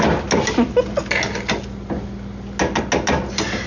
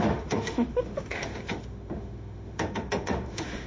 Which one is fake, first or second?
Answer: second